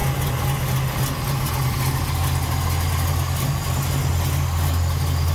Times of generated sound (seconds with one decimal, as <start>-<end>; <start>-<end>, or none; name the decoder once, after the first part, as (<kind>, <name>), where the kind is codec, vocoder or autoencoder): none